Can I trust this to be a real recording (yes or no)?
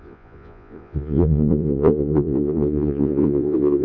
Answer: no